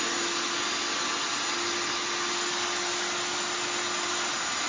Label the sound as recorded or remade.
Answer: recorded